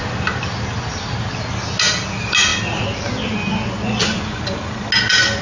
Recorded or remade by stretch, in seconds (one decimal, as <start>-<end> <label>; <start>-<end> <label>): 0.0-5.4 recorded